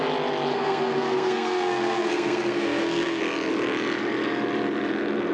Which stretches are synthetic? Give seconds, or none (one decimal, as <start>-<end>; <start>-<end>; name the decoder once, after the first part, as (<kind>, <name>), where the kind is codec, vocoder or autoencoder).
0.5-3.2 (codec, SNAC)